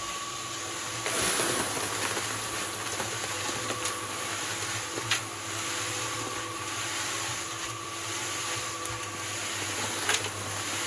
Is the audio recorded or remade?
recorded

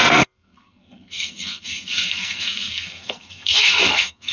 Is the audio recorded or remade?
remade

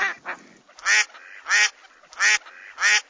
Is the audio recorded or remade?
recorded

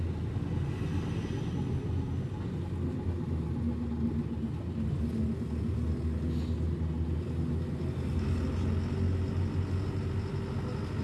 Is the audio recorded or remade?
recorded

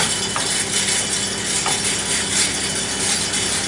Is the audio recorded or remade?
recorded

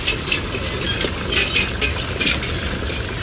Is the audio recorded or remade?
recorded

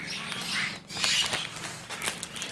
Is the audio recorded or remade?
recorded